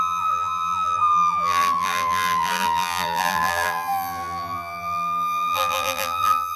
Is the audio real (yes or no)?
no